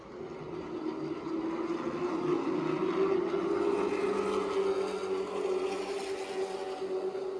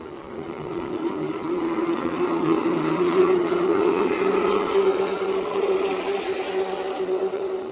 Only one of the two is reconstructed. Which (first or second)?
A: second